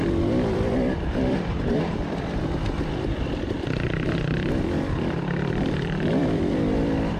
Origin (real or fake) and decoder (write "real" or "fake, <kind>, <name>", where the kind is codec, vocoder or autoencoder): fake, vocoder, BigVGAN v2